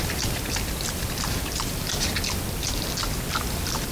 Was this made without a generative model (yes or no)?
yes